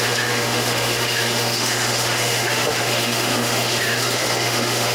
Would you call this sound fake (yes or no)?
yes